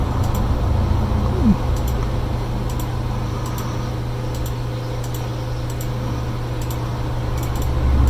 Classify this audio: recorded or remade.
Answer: recorded